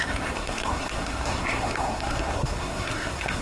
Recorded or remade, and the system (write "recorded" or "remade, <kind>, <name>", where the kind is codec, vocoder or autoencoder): remade, codec, SNAC